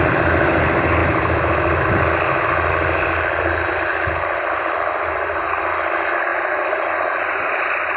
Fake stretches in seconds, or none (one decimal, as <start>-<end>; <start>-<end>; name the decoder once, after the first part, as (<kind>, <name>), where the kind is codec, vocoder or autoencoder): none